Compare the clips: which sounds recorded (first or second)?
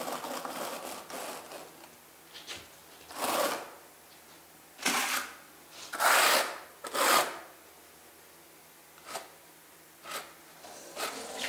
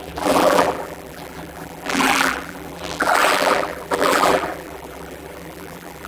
first